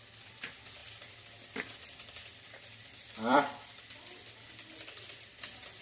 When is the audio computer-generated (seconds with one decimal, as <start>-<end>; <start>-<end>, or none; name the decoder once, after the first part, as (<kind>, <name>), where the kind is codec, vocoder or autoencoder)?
0.8-3.8 (vocoder, BigVGAN v2)